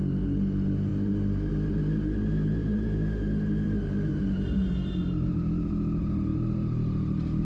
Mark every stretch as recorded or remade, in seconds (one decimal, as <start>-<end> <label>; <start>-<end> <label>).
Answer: 0.0-2.6 recorded; 2.6-4.7 remade; 4.7-7.4 recorded

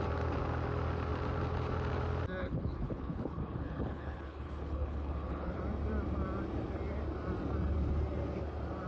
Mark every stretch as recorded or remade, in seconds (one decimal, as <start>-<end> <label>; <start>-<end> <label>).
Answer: 0.0-2.4 recorded; 2.4-5.6 remade; 5.6-8.9 recorded